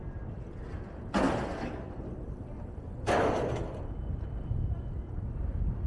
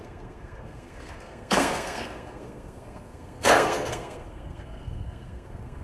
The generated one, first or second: second